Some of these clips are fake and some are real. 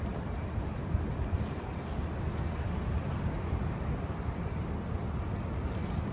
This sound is real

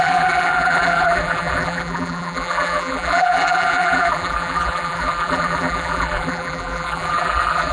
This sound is fake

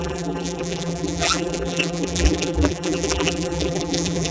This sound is fake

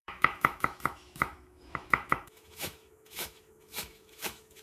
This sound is fake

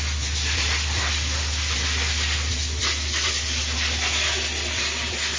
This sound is real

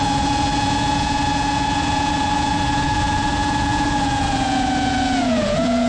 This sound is fake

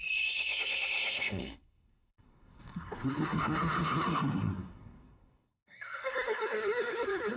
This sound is fake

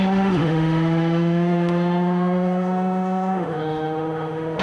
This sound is fake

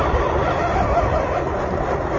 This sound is real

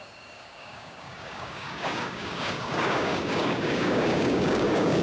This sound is fake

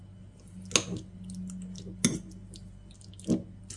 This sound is real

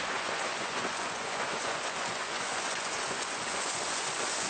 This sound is fake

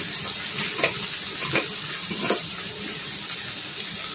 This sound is real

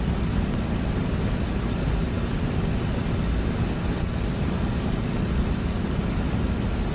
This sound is real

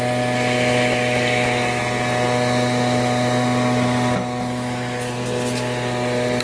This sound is real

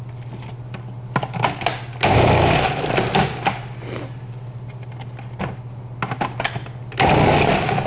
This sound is real